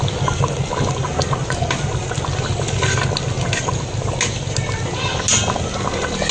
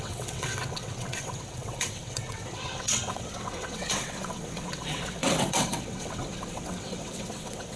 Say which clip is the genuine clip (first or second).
first